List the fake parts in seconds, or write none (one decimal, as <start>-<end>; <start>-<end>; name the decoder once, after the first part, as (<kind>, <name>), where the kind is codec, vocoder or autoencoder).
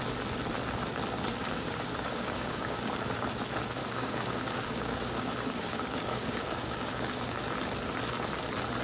1.4-2.9 (codec, DAC); 3.8-7.4